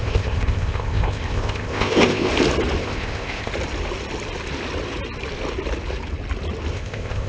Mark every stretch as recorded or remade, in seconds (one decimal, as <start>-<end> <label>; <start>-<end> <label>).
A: 0.0-2.3 remade; 2.3-2.8 recorded; 2.8-3.5 remade; 3.5-6.7 recorded; 6.7-7.3 remade